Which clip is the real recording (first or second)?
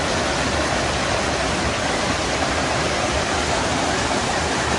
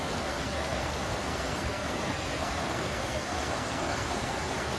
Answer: first